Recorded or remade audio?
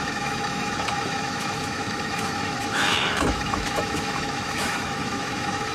remade